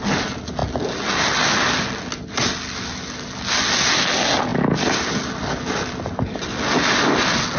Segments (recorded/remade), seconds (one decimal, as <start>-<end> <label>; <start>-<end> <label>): 0.0-7.6 recorded